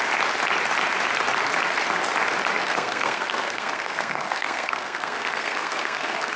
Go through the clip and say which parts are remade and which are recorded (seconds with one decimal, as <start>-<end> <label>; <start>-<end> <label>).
0.0-2.6 recorded; 2.6-6.4 remade